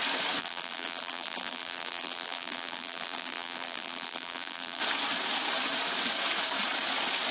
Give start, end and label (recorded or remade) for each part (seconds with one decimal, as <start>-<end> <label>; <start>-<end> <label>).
0.0-0.4 recorded; 0.4-4.8 remade; 4.8-7.3 recorded